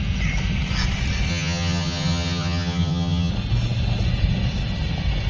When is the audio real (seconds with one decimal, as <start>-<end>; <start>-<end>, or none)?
0.0-1.3; 3.3-5.3